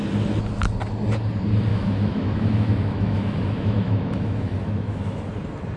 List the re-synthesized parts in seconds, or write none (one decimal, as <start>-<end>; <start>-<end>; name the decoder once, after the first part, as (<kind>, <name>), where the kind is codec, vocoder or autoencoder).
1.7-5.2 (autoencoder, DAC-VAE)